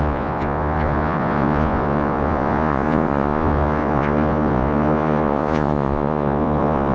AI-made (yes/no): yes